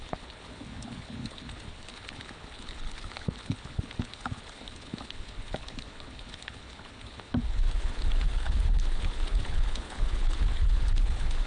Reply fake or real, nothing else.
fake